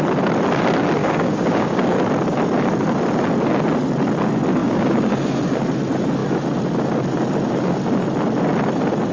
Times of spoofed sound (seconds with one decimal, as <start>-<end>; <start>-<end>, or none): 1.0-2.0; 4.6-5.1